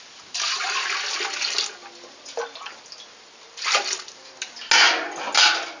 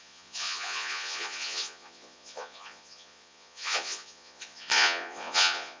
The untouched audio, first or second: first